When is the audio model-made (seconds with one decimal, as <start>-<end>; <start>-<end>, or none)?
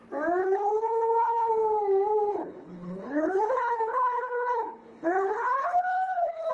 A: 0.4-1.5; 2.3-6.5